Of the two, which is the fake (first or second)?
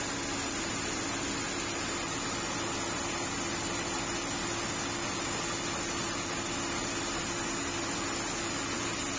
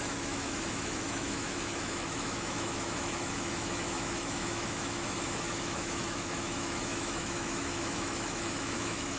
second